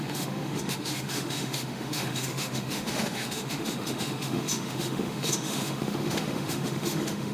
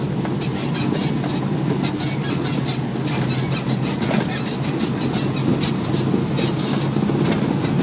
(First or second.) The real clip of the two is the second